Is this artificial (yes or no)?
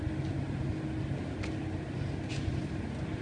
no